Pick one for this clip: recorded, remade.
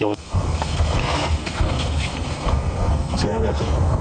remade